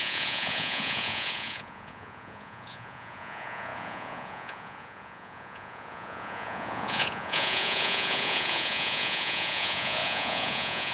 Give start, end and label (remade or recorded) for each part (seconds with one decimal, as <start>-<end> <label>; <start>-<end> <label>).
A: 0.0-10.9 remade